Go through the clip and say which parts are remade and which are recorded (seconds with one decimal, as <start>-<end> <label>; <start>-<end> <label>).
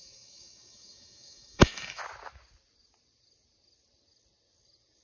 0.0-2.0 remade; 2.0-5.0 recorded